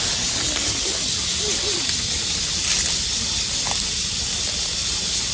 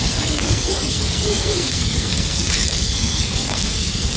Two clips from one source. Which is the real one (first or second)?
first